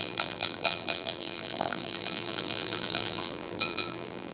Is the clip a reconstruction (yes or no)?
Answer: yes